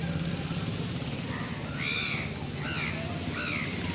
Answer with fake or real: real